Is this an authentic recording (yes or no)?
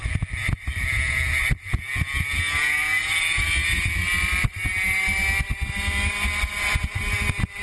yes